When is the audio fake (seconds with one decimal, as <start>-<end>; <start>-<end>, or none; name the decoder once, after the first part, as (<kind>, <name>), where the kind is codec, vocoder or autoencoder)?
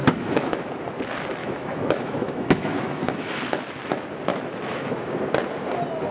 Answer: 0.0-0.7 (autoencoder, DAC-VAE); 1.4-3.4; 4.3-5.1